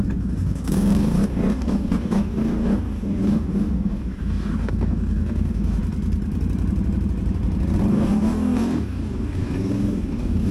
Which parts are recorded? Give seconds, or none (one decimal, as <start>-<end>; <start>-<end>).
5.8-7.9